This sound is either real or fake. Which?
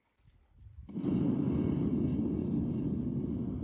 real